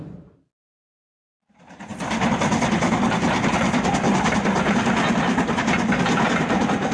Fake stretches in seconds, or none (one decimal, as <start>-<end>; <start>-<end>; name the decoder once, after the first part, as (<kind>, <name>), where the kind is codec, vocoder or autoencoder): none

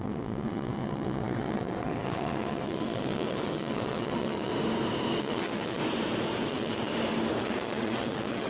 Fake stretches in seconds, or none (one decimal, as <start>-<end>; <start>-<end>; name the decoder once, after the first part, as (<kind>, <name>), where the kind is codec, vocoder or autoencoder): 0.0-4.5 (vocoder, WaveNeXt); 5.2-5.8; 6.5-6.9; 7.4-8.5

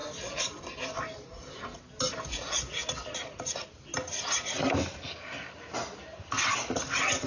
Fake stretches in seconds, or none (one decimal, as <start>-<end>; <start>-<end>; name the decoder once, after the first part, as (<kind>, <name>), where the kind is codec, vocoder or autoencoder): none

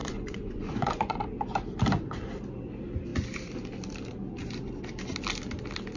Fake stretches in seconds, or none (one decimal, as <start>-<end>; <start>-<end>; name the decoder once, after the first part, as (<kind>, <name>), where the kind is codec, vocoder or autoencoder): 0.0-1.2 (vocoder, Vocos)

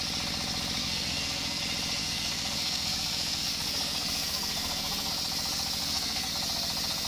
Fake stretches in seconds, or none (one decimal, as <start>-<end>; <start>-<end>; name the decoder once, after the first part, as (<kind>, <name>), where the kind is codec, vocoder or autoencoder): 0.8-1.6 (codec, SNAC); 2.0-5.1; 5.8-6.3

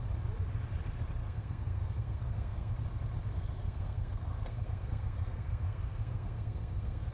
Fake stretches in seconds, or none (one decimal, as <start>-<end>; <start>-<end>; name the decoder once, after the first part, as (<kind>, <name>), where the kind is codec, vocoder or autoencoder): 1.2-2.7 (codec, SNAC); 3.3-7.1

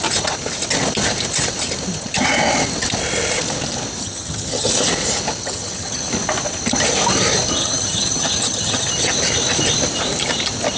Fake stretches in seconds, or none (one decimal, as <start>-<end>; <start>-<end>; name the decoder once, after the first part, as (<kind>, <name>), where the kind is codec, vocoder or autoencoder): 4.0-4.7 (vocoder, HiFi-GAN); 5.4-6.1; 7.6-8.9

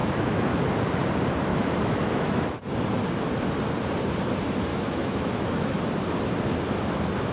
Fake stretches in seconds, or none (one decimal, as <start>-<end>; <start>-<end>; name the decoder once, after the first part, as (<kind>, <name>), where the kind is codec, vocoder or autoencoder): 0.0-0.6 (autoencoder, DAC-VAE); 1.5-2.6; 4.7-5.8